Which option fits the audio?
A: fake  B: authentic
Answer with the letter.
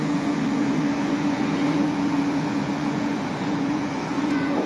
A